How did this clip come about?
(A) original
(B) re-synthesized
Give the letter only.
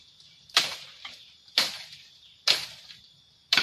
B